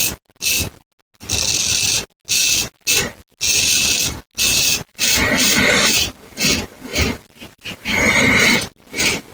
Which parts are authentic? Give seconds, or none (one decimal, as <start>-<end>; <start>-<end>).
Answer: 0.0-6.9; 8.4-9.3